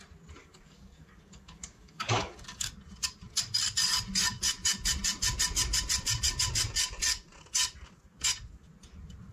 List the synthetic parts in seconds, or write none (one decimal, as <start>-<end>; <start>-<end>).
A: 0.4-2.7